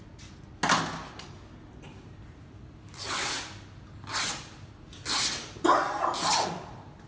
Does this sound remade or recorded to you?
recorded